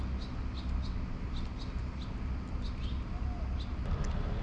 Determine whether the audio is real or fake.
real